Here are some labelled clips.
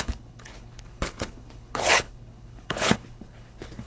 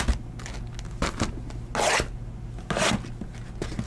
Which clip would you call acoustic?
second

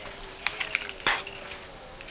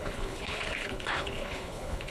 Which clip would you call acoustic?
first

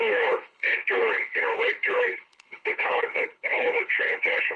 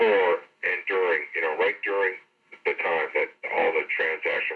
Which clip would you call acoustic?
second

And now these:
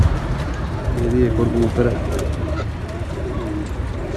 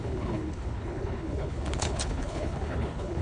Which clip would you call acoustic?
first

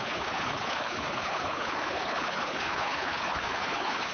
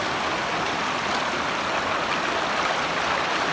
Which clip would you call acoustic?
second